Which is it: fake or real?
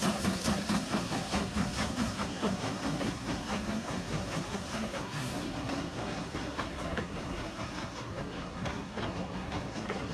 fake